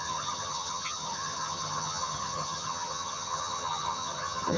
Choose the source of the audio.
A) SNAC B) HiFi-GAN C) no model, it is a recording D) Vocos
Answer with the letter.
B